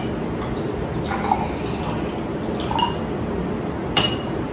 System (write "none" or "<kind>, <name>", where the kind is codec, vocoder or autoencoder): none